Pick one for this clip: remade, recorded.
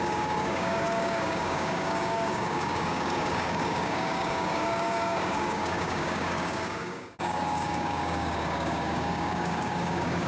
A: remade